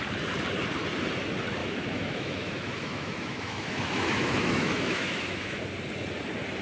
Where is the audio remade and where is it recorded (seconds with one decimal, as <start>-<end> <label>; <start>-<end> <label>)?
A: 0.0-1.6 recorded; 1.6-5.6 remade; 5.6-6.6 recorded